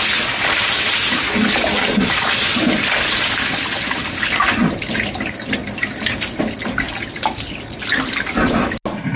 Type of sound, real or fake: real